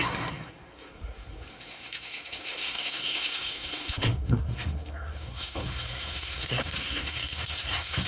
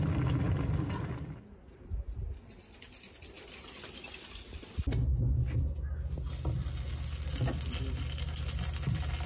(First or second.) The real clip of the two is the second